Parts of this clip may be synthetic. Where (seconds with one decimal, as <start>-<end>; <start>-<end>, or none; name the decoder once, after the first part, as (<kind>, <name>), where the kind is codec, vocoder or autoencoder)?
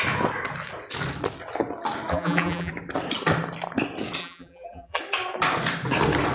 2.1-2.7 (vocoder, BigVGAN v2); 4.2-5.0